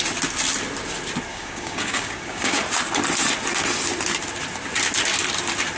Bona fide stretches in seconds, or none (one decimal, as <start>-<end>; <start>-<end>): 0.0-1.3; 2.6-5.8